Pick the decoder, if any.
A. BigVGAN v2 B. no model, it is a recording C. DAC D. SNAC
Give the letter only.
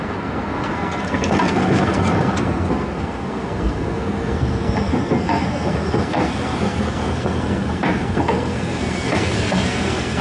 D